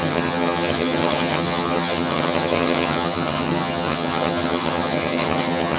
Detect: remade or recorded remade